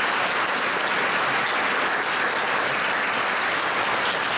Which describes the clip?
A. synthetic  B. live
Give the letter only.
B